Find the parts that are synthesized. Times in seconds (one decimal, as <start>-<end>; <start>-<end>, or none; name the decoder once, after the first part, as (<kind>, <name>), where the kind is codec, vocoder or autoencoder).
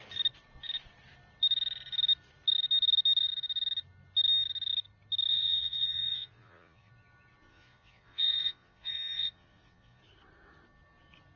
5.3-6.9 (vocoder, Vocos); 7.5-10.0